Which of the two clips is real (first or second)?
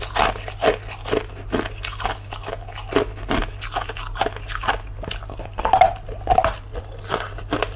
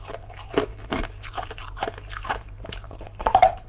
first